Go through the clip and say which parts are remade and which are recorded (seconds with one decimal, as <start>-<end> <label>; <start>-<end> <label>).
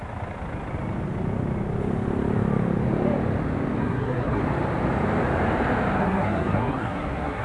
0.0-3.8 recorded; 3.8-4.4 remade; 4.4-6.0 recorded; 6.0-7.4 remade